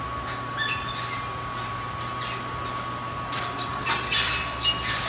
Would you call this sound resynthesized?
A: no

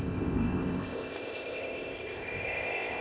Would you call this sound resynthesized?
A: yes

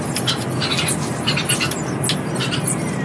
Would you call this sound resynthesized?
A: no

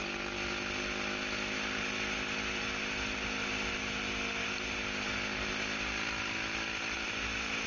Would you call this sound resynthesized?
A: no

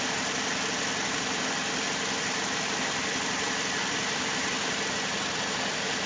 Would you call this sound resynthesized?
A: no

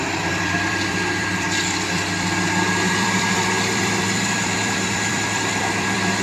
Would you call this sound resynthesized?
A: yes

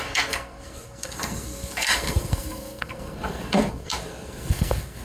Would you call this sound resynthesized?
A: yes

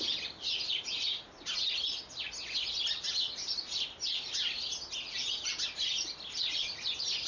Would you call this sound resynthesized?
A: no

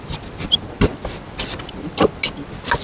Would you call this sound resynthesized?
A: no